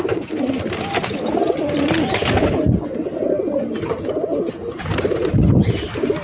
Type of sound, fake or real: real